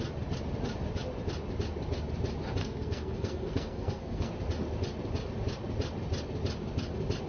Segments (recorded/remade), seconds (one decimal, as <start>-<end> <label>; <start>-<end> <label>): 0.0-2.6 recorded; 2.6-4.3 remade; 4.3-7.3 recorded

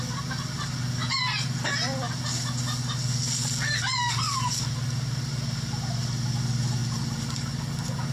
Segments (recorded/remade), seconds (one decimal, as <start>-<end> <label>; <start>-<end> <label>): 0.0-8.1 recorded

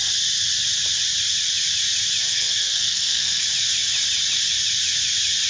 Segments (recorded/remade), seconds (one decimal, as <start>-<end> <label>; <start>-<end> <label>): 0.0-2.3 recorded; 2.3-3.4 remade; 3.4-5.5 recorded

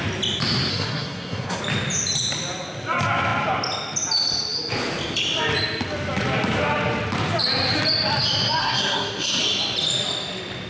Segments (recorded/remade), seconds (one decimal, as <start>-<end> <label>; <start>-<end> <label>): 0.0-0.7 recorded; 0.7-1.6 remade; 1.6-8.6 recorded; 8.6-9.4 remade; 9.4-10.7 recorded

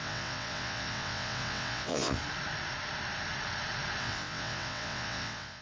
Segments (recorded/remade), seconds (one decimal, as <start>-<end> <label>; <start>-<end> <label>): 0.0-2.2 remade; 2.2-4.0 recorded; 4.0-5.6 remade

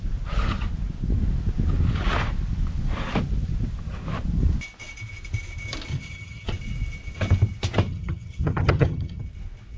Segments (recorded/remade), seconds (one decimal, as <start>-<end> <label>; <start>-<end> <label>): 0.0-5.9 recorded; 5.9-6.5 remade; 6.5-7.9 recorded; 7.9-9.2 remade; 9.2-9.8 recorded

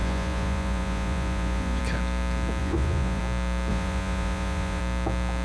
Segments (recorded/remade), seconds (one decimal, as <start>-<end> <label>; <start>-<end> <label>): 0.0-1.8 remade; 1.8-2.6 recorded; 2.6-3.2 remade; 3.2-3.7 recorded; 3.7-4.8 remade; 4.8-5.4 recorded

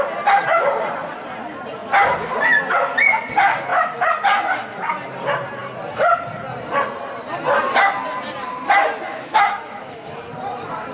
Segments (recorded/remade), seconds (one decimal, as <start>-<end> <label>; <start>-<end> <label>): 0.0-9.1 recorded; 9.1-10.2 remade; 10.2-10.9 recorded